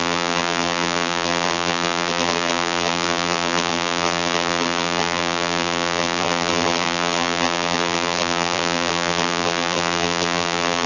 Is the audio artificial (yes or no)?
yes